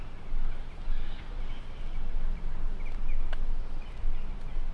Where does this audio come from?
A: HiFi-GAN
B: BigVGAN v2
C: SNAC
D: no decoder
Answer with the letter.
D